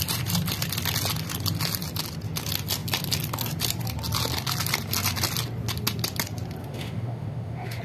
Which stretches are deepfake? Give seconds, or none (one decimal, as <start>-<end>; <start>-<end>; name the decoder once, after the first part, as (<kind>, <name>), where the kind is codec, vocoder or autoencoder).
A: 6.6-7.8 (autoencoder, DAC-VAE)